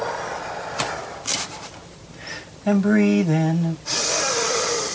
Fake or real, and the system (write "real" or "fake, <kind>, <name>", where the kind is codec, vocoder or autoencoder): real